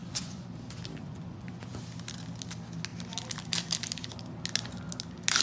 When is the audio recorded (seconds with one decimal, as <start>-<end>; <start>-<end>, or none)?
0.5-1.0; 1.8-5.4